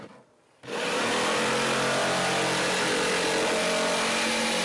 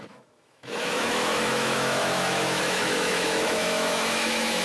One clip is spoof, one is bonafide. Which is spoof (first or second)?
second